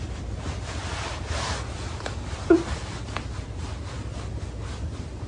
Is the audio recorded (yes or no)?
no